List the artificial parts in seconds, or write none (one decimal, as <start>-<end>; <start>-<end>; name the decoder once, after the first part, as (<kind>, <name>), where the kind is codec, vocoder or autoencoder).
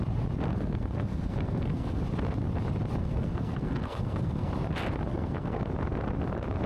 0.5-2.0 (codec, SNAC); 3.0-4.5; 5.1-5.6